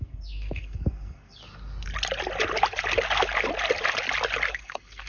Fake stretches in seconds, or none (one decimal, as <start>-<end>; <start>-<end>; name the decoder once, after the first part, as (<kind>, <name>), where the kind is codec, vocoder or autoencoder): 0.0-1.4 (codec, SNAC); 4.5-5.1